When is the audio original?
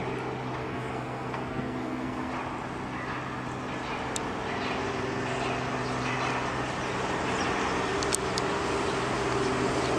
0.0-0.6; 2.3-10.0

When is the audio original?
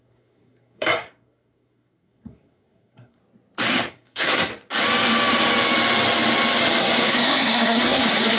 3.2-3.9; 4.5-6.8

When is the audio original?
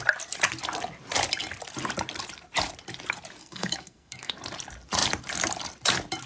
0.0-3.4; 4.3-6.3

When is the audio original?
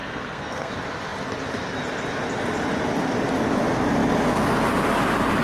0.7-5.4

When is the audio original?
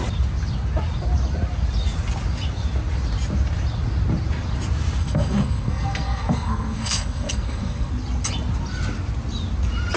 0.0-5.0; 7.9-10.0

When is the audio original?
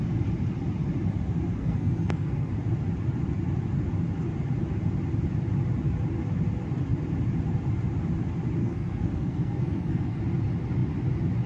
0.0-1.6; 2.5-8.6; 10.2-11.5